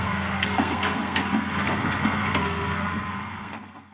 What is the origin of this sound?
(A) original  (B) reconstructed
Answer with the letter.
B